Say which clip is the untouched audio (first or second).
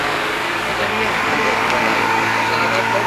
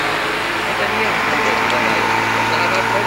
second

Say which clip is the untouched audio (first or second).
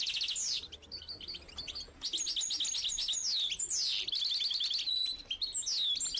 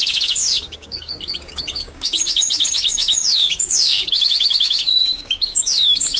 first